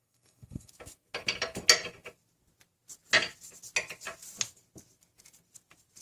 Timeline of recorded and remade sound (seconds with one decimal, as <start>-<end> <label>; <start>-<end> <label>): 0.0-0.7 remade; 0.7-6.0 recorded